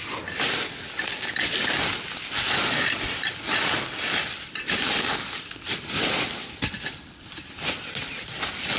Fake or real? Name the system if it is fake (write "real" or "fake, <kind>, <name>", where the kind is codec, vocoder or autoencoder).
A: real